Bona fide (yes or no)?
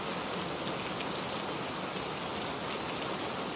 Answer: yes